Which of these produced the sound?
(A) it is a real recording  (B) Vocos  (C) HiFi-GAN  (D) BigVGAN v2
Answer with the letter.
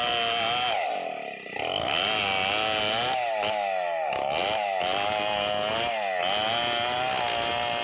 A